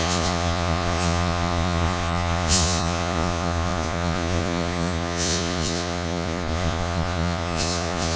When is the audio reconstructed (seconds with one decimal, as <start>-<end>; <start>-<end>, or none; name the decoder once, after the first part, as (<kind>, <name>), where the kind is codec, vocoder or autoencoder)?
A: 0.0-8.2 (vocoder, Vocos)